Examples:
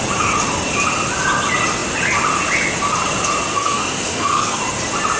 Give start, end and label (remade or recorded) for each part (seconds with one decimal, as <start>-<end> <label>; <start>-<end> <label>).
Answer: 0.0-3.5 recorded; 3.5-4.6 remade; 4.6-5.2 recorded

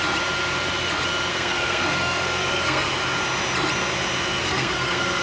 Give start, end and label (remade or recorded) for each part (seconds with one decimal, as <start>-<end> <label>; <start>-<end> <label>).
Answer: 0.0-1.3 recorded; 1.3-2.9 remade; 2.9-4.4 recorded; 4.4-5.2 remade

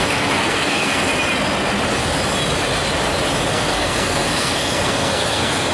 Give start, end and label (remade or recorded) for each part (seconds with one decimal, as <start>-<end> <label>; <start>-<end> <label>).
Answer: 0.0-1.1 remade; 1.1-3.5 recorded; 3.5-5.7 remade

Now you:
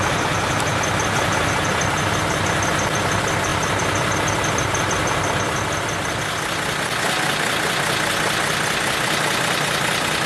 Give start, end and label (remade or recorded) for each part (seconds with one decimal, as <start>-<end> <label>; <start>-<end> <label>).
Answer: 0.0-10.3 recorded

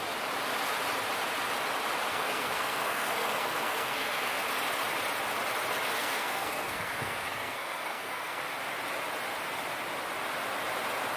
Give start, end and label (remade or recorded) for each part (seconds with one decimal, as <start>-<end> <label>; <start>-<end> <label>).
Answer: 0.0-2.1 recorded; 2.1-4.4 remade; 4.4-6.0 recorded; 6.0-8.4 remade; 8.4-11.2 recorded